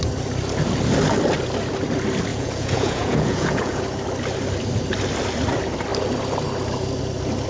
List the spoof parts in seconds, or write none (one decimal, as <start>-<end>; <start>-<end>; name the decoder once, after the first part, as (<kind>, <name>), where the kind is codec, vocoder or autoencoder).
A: 2.3-3.8 (vocoder, Vocos)